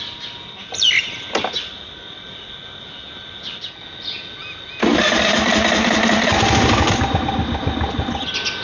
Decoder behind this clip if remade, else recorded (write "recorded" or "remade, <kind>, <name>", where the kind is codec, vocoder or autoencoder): recorded